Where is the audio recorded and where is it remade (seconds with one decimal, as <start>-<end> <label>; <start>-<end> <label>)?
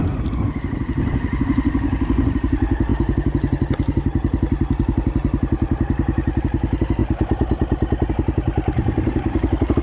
0.0-9.8 recorded